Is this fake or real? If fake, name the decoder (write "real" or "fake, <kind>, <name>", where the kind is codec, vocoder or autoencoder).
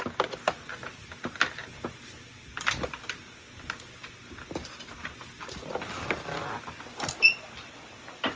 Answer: real